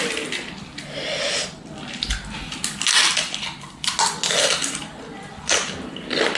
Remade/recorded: recorded